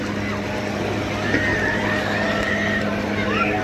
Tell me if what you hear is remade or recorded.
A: recorded